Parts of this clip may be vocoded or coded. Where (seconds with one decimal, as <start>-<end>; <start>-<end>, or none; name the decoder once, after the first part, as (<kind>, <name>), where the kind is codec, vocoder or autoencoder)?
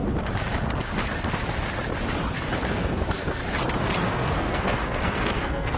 2.7-3.4 (codec, SNAC); 4.1-5.8